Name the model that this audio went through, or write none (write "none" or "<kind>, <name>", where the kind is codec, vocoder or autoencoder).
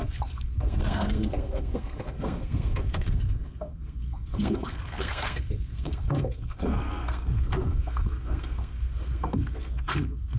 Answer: codec, SNAC